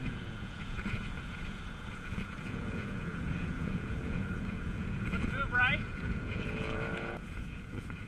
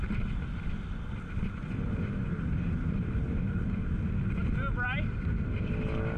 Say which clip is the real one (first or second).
second